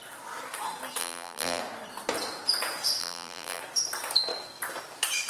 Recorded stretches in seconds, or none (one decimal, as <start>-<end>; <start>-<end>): 0.0-1.0; 1.6-3.0; 3.6-5.3